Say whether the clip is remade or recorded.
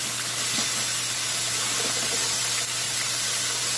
recorded